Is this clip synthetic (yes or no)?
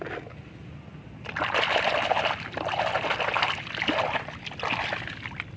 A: no